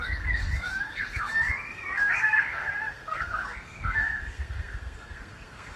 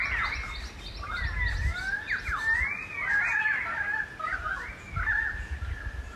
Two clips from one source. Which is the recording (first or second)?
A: second